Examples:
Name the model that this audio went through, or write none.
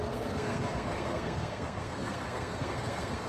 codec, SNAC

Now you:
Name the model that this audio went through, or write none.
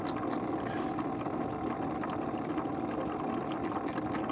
none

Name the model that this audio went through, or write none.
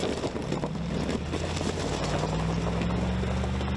none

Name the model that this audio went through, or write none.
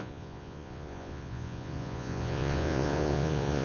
vocoder, Vocos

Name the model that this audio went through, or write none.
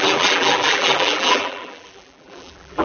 vocoder, BigVGAN v2